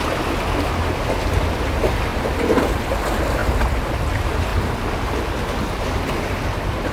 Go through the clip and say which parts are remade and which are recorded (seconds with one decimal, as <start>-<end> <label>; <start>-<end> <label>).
0.0-2.1 recorded; 2.1-2.8 remade; 2.8-6.9 recorded